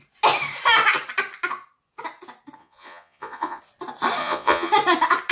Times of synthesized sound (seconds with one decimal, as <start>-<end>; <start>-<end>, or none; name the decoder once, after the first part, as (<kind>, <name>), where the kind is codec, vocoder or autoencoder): 2.6-3.6 (vocoder, Vocos); 4.2-4.7